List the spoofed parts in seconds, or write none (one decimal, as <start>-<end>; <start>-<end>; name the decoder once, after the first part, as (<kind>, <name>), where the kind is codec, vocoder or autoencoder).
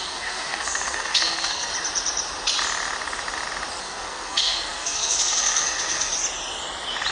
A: 0.0-1.7 (codec, SNAC); 3.8-6.1